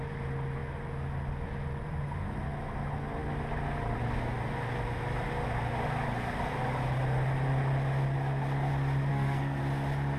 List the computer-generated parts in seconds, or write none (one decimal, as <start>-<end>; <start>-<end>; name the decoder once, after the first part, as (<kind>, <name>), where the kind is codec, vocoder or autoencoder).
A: 9.1-9.6 (codec, SNAC)

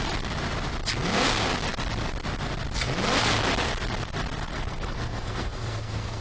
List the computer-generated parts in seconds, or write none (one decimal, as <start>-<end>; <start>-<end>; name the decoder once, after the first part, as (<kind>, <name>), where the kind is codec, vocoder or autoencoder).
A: 4.5-6.2 (codec, SNAC)

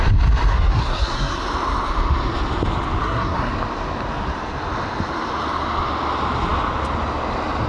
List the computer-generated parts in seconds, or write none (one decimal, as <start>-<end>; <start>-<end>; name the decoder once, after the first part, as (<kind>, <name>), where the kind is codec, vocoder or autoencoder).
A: 0.5-1.4 (codec, SNAC); 3.0-3.5

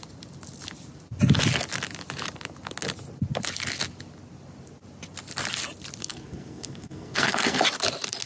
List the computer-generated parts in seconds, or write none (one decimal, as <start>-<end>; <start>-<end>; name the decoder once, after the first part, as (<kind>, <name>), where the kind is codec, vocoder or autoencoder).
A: 6.0-7.6 (codec, SNAC)

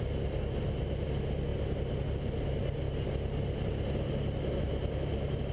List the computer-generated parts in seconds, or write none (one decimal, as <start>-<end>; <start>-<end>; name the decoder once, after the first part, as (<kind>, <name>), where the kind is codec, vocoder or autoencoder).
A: none

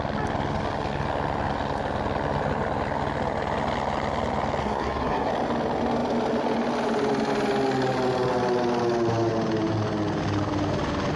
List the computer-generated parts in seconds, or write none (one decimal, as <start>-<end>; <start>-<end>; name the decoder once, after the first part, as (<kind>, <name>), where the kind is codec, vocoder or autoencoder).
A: 4.6-5.3 (codec, SNAC)

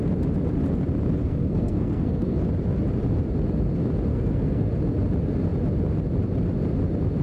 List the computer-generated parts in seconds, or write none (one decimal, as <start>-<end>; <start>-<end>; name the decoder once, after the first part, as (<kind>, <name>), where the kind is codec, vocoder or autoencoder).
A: 1.2-2.4 (codec, SNAC); 4.1-4.7